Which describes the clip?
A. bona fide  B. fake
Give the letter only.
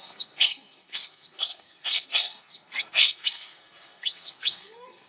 B